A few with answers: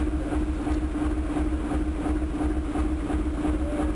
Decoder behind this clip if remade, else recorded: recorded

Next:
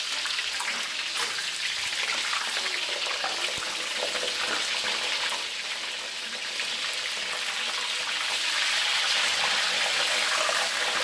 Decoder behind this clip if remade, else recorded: recorded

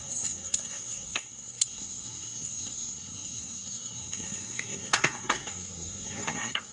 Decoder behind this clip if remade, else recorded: remade, codec, SNAC